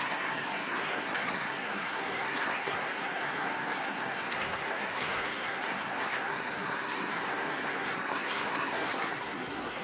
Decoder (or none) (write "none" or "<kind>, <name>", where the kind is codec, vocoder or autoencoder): codec, SNAC